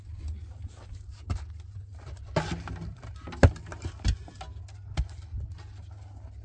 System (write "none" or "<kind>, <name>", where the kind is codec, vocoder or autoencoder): none